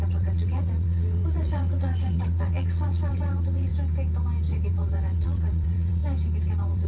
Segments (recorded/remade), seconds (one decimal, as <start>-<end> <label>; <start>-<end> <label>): 0.0-3.7 remade; 3.7-4.7 recorded; 4.7-6.0 remade; 6.0-6.5 recorded; 6.5-6.9 remade